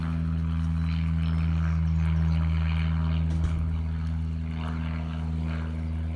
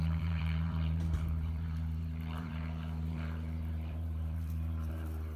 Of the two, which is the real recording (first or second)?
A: first